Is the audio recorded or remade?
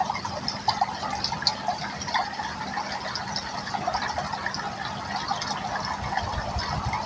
recorded